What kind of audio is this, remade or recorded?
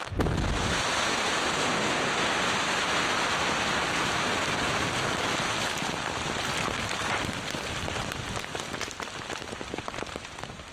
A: recorded